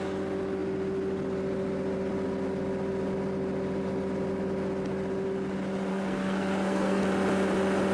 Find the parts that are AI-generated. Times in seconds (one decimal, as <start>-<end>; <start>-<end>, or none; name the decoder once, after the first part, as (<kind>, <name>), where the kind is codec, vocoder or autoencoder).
5.9-7.0 (codec, SNAC)